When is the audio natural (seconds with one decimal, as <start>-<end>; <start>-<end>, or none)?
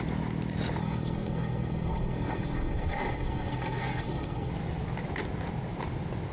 0.0-0.8; 4.5-6.3